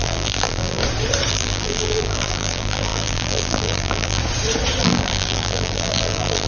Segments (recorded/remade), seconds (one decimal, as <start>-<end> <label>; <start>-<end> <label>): 0.0-0.8 remade; 0.8-1.3 recorded; 1.3-4.2 remade; 4.2-4.8 recorded; 4.8-6.5 remade